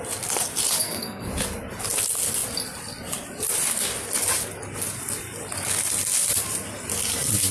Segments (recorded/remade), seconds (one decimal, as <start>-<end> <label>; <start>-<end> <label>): 0.0-0.8 recorded; 0.8-1.3 remade; 1.3-7.5 recorded